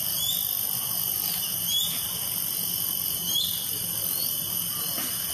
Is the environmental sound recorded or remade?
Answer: recorded